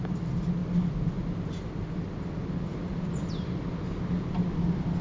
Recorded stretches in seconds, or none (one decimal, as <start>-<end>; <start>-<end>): 0.0-5.0